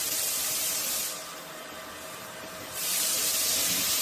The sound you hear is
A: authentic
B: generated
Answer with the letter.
B